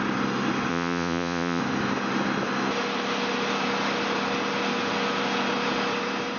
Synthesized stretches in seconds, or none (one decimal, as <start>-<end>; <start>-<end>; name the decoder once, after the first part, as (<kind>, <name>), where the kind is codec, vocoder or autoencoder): 0.7-1.6 (vocoder, Vocos)

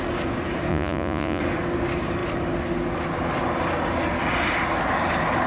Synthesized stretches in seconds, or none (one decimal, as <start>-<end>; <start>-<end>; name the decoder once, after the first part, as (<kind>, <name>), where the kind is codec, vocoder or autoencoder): 0.7-1.4 (vocoder, Vocos)

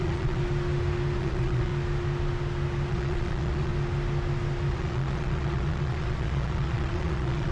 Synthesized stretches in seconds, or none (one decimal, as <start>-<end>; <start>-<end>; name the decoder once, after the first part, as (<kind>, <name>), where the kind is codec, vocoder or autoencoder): 0.0-0.4 (vocoder, Vocos); 1.2-1.7; 2.9-3.7; 4.7-7.5

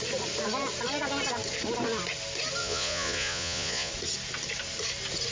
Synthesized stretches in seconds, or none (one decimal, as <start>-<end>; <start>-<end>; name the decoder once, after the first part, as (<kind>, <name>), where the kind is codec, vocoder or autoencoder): 2.6-3.9 (vocoder, Vocos)

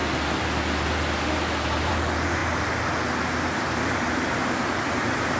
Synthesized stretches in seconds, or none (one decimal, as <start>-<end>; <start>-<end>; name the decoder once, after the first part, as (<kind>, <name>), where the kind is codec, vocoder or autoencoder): none

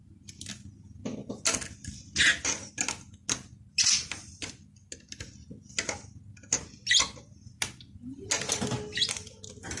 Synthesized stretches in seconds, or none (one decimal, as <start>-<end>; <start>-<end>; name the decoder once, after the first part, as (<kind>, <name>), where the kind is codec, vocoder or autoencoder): none

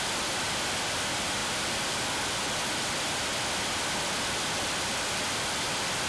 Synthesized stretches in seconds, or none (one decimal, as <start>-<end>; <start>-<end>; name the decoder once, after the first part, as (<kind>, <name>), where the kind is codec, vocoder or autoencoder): none

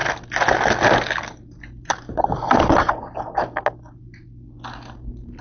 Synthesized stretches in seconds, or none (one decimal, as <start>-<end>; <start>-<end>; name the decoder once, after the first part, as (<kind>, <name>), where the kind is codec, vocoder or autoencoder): none